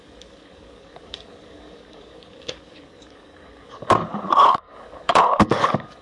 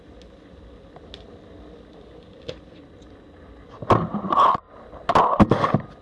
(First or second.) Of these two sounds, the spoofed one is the first